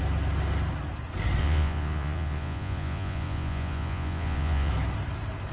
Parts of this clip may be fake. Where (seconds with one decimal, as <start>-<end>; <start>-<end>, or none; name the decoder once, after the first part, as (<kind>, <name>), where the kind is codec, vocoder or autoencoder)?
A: 1.4-4.7 (vocoder, Vocos)